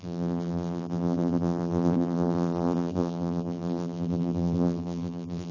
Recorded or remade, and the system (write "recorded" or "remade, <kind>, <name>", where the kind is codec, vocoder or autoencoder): remade, vocoder, BigVGAN v2